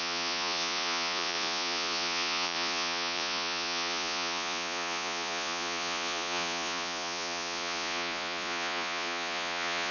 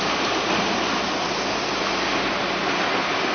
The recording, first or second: second